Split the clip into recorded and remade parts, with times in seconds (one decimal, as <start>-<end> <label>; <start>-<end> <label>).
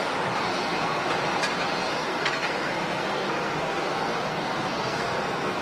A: 0.0-0.5 recorded; 0.5-1.0 remade; 1.0-2.0 recorded; 2.0-5.6 remade